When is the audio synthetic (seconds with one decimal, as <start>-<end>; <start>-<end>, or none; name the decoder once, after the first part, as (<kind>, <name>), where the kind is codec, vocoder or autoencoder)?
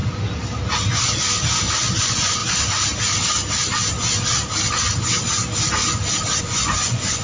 2.0-2.4 (vocoder, Vocos); 6.4-7.2